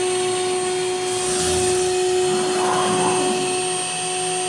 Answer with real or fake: real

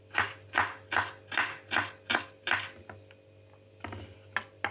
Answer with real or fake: real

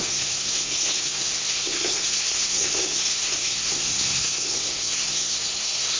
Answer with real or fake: fake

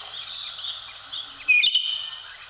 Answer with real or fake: real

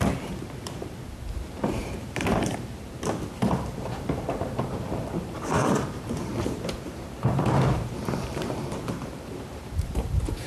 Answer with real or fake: fake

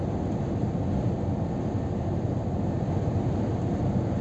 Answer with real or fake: real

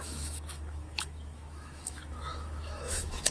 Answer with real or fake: fake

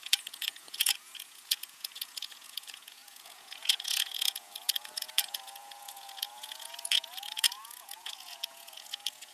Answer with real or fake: fake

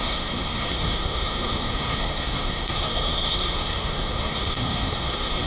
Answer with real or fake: fake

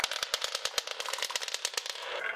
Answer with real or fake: real